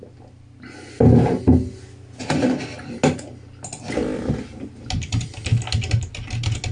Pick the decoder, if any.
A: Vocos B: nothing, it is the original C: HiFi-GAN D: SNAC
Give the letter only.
B